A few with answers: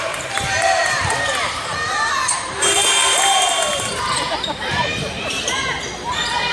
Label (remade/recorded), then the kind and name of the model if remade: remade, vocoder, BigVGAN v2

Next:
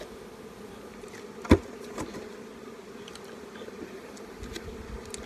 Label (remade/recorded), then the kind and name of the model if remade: recorded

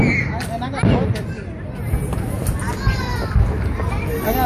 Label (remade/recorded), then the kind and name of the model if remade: recorded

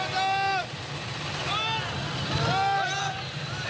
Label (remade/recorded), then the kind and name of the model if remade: recorded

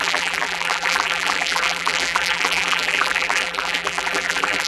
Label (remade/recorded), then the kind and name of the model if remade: remade, vocoder, BigVGAN v2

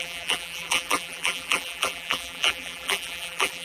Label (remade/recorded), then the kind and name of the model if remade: remade, vocoder, BigVGAN v2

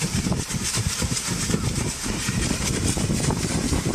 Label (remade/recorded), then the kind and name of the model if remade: remade, vocoder, BigVGAN v2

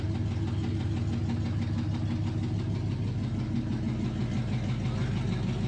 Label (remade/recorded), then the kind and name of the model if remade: recorded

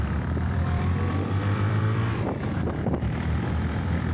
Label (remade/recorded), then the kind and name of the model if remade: remade, vocoder, BigVGAN v2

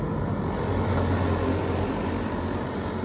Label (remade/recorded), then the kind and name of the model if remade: recorded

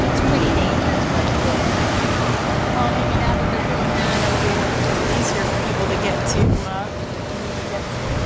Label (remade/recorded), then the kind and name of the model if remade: recorded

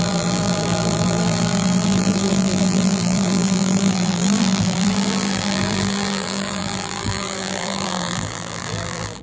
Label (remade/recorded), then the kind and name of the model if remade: remade, vocoder, BigVGAN v2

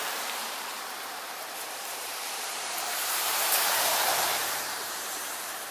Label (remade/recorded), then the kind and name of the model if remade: remade, vocoder, BigVGAN v2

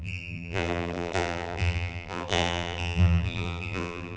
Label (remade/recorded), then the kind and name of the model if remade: remade, vocoder, BigVGAN v2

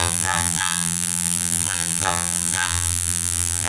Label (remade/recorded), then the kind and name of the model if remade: remade, vocoder, BigVGAN v2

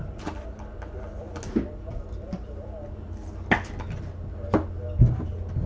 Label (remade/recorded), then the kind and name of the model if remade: recorded